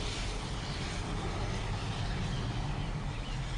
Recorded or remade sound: recorded